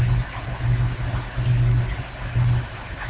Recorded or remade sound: recorded